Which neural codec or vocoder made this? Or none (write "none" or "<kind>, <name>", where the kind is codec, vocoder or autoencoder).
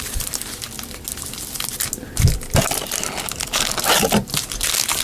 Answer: none